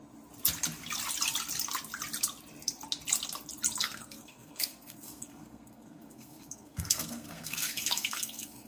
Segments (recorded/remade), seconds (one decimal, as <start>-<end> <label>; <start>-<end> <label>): 0.0-3.8 recorded; 3.8-8.7 remade